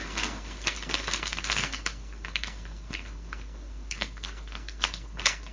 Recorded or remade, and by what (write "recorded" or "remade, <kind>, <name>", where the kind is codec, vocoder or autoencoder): remade, codec, SNAC